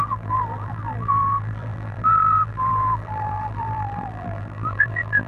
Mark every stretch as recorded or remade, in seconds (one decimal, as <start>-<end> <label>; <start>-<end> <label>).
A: 0.0-5.3 remade